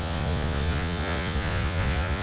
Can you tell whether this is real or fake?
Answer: fake